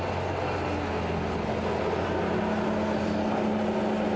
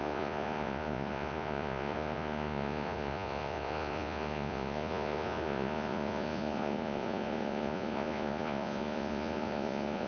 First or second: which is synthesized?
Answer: second